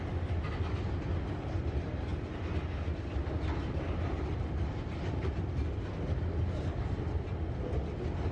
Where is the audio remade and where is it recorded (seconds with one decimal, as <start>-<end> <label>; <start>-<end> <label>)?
0.0-8.3 recorded